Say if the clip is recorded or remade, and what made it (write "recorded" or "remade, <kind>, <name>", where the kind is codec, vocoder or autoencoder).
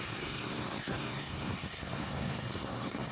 remade, codec, SNAC